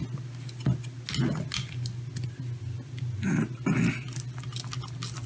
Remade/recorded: recorded